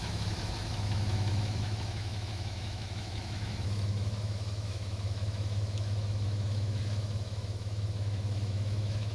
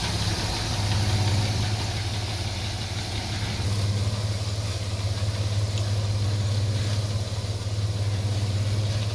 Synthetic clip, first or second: first